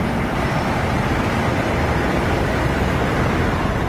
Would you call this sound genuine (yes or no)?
yes